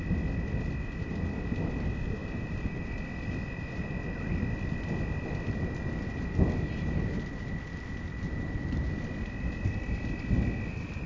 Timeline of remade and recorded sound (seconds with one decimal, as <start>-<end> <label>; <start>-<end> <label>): 0.0-2.2 recorded; 2.2-2.9 remade; 2.9-8.1 recorded; 8.1-9.0 remade; 9.0-11.1 recorded